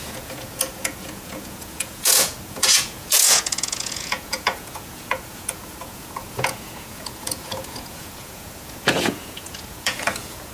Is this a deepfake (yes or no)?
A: yes